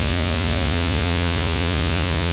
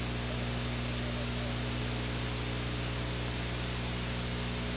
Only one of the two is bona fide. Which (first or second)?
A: second